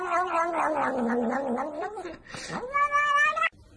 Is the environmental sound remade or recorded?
recorded